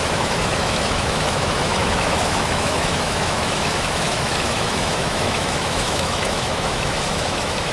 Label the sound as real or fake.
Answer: fake